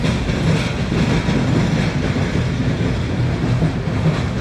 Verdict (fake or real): real